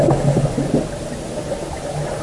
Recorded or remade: recorded